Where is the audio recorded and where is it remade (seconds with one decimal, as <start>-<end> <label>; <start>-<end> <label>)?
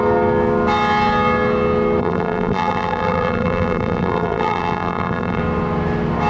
0.0-2.0 recorded; 2.0-5.4 remade; 5.4-6.3 recorded